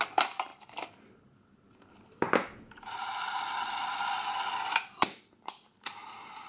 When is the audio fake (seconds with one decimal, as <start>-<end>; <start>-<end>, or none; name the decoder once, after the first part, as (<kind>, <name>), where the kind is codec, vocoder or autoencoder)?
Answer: none

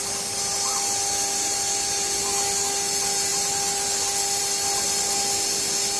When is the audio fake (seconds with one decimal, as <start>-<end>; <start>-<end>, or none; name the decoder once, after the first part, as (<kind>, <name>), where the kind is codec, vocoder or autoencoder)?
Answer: none

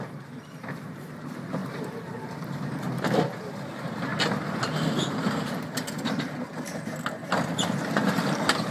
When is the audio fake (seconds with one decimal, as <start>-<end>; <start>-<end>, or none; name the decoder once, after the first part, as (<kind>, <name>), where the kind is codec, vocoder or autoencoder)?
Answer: 0.0-4.1 (vocoder, BigVGAN v2); 8.0-8.7

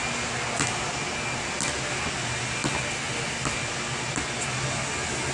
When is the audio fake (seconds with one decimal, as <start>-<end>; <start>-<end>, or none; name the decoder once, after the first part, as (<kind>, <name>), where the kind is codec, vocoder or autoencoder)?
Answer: none